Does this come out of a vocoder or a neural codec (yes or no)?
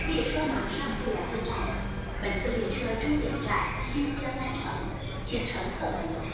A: no